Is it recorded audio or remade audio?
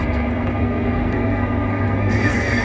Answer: remade